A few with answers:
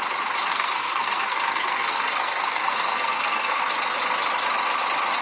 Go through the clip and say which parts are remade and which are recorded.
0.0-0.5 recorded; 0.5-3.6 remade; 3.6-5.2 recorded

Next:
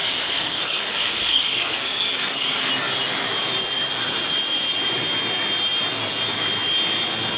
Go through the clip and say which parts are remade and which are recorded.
0.0-2.7 remade; 2.7-7.4 recorded